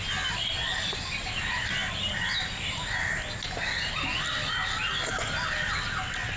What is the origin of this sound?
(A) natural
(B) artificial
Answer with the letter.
A